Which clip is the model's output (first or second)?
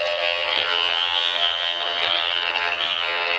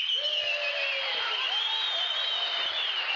first